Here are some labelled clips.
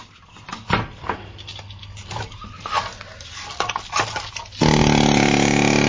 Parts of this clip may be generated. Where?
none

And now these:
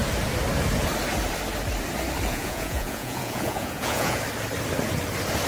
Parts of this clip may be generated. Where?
2.3-4.2

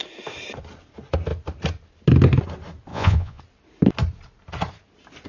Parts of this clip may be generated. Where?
2.9-3.4

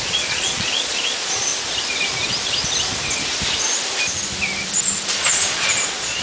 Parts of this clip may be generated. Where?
0.0-1.5; 5.2-6.2

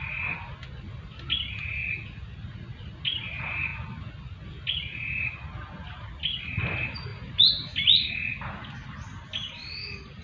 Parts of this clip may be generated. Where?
1.8-3.0

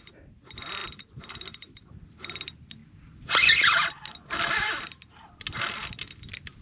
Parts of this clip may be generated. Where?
none

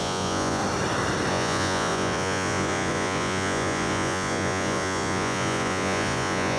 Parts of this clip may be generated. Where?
0.0-0.6; 1.3-6.6

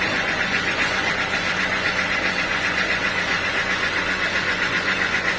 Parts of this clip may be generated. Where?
0.0-5.4